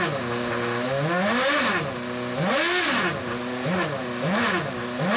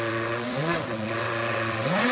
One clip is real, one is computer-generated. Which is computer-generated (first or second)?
second